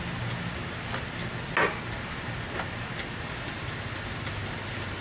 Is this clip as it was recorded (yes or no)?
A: yes